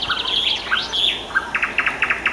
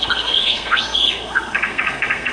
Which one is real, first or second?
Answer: first